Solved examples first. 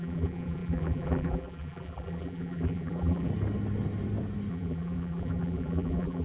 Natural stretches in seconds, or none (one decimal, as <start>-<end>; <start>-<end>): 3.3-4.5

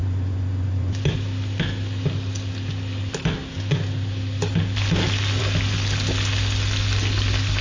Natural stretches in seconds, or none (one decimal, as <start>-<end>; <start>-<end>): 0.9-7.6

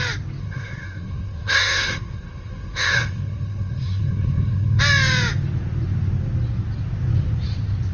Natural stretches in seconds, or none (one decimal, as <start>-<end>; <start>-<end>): 0.0-0.4; 4.8-7.9

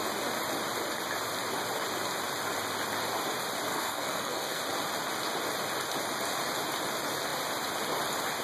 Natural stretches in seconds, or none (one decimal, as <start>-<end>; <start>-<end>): 0.0-3.7; 4.6-8.4

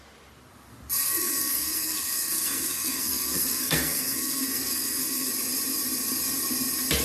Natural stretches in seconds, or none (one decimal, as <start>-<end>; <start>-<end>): 0.0-1.1; 5.3-7.0

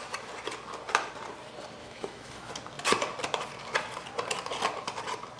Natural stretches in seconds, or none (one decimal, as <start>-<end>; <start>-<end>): 0.0-1.8; 2.5-5.4

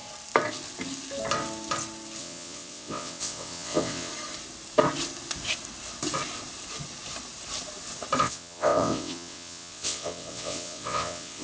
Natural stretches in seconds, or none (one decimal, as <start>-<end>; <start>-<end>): 0.0-2.2; 4.1-8.2